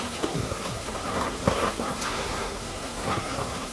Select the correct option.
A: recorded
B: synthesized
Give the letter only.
B